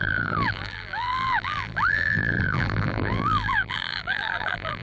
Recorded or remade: remade